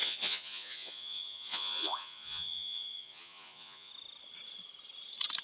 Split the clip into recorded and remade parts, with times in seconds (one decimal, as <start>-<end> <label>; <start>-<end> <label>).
0.0-3.9 remade; 3.9-5.4 recorded

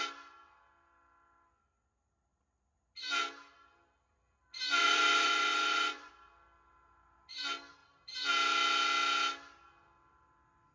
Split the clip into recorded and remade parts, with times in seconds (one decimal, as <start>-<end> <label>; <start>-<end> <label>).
0.0-4.8 recorded; 4.8-6.1 remade; 6.1-10.7 recorded